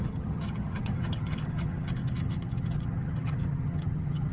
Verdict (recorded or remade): remade